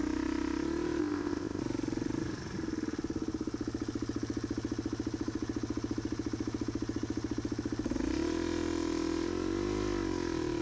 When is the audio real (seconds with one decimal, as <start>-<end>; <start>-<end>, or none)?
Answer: 0.0-1.0; 1.6-10.6